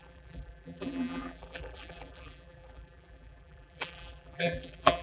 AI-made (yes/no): yes